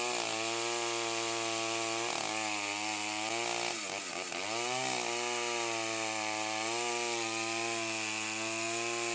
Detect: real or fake real